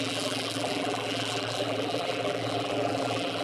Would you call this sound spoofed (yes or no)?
yes